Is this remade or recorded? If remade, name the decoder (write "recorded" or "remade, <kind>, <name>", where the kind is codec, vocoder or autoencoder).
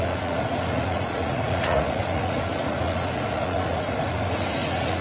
remade, vocoder, Vocos